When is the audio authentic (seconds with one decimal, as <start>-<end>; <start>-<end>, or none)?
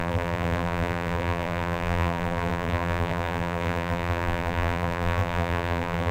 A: none